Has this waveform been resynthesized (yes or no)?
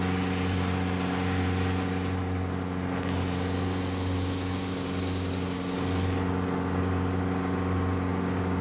no